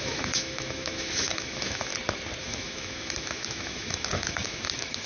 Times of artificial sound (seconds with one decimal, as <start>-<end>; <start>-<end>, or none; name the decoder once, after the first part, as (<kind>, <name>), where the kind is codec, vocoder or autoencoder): 0.0-1.9 (autoencoder, DAC-VAE); 2.4-5.1